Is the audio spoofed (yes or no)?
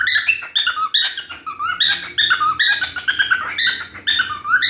no